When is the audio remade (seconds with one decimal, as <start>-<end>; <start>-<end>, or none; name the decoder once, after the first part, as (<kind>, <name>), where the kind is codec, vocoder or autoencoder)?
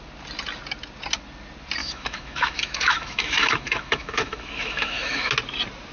1.8-5.3 (autoencoder, DAC-VAE)